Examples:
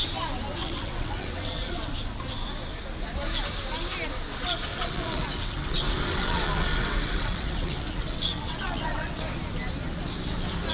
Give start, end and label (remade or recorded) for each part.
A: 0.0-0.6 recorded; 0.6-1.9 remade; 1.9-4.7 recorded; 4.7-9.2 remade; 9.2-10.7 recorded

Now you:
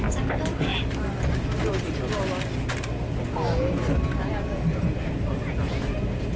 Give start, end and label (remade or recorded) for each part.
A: 0.0-6.4 recorded

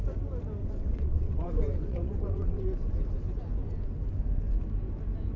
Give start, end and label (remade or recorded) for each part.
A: 0.0-0.6 recorded; 0.6-2.6 remade; 2.6-5.4 recorded

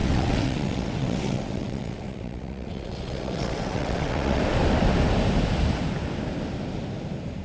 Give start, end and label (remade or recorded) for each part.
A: 0.0-4.4 remade; 4.4-7.4 recorded